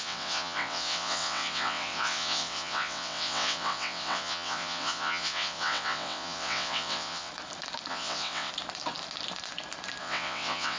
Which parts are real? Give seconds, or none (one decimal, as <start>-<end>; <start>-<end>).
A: 7.3-7.9; 8.5-10.0